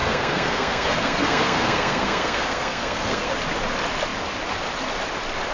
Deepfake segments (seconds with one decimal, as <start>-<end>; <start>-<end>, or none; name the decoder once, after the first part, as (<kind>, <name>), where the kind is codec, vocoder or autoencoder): 0.0-3.3 (codec, SNAC)